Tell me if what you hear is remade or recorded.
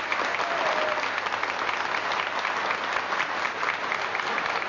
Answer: recorded